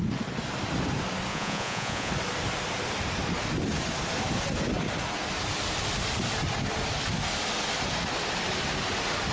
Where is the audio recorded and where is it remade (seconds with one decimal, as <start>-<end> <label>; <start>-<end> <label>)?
0.0-1.3 recorded; 1.3-2.1 remade; 2.1-9.3 recorded